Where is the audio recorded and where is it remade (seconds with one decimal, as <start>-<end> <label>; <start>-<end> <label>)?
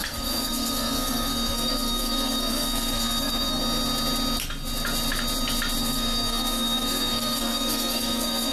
0.0-3.6 remade; 3.6-5.8 recorded; 5.8-8.5 remade